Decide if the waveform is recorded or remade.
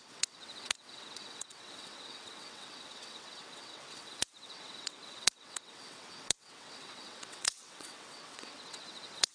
remade